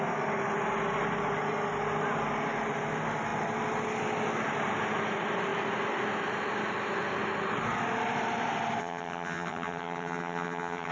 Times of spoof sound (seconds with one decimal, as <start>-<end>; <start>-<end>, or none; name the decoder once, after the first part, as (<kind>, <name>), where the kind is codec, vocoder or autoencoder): 8.8-10.9 (vocoder, HiFi-GAN)